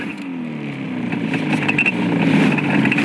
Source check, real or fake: real